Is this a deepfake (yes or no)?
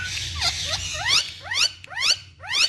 yes